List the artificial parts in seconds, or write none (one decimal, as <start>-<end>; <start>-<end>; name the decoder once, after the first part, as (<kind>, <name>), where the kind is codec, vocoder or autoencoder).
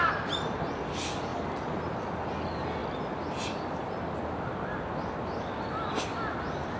none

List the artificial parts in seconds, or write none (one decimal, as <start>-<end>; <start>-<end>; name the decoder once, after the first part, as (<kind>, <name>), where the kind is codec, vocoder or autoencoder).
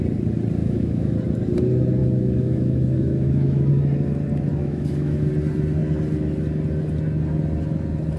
0.6-1.1 (autoencoder, DAC-VAE); 2.0-3.7; 4.5-5.3